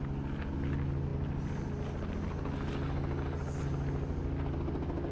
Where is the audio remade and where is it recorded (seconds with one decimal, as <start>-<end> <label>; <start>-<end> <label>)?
0.0-5.1 recorded

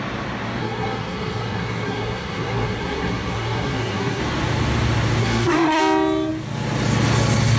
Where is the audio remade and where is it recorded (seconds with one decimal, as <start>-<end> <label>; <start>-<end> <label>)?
0.0-0.6 recorded; 0.6-4.2 remade; 4.2-5.2 recorded; 5.2-5.8 remade; 5.8-7.6 recorded

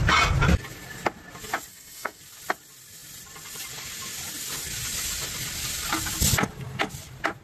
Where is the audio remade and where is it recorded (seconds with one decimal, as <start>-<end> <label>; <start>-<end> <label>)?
0.0-1.7 recorded; 1.7-2.2 remade; 2.2-7.4 recorded

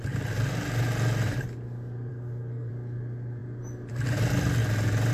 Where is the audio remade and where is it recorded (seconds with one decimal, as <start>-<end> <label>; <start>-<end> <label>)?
0.0-2.1 recorded; 2.1-2.7 remade; 2.7-5.1 recorded